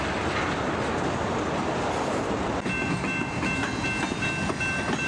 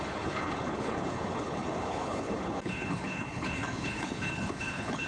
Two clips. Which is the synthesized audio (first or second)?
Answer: second